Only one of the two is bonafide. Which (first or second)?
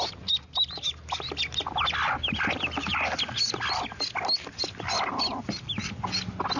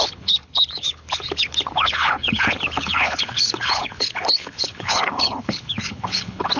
first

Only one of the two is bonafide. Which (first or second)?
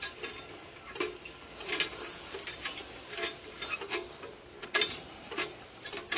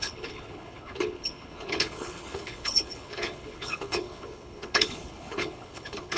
first